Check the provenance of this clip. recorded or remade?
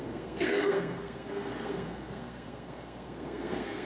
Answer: remade